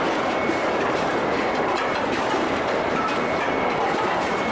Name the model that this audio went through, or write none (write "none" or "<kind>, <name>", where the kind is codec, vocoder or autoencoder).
vocoder, BigVGAN v2